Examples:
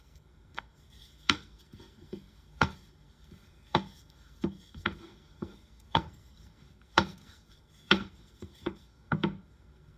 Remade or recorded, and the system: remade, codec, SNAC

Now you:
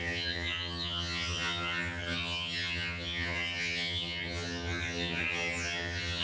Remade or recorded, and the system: remade, vocoder, HiFi-GAN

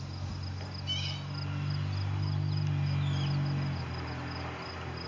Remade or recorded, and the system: recorded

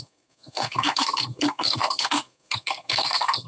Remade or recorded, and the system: remade, codec, SNAC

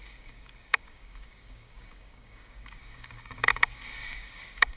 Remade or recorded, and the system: remade, codec, DAC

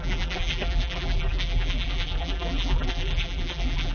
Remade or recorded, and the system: remade, vocoder, BigVGAN v2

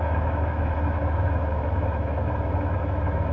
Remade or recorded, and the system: remade, autoencoder, DAC-VAE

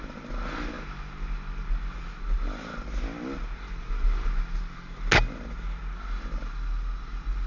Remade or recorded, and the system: recorded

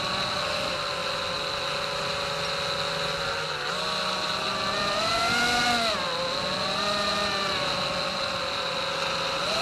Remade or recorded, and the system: recorded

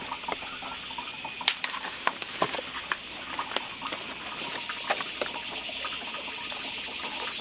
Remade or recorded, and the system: recorded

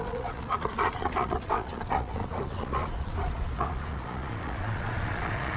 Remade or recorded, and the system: remade, vocoder, Vocos